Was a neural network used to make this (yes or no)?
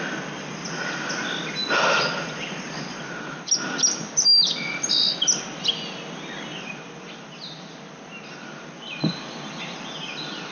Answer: no